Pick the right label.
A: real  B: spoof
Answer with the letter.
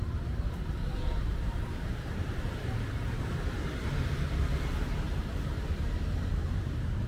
B